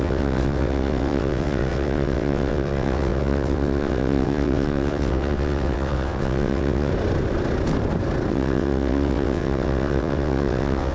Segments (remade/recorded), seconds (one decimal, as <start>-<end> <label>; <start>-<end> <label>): 0.0-6.9 remade; 6.9-8.3 recorded; 8.3-10.9 remade